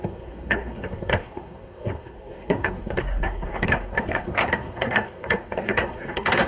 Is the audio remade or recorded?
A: remade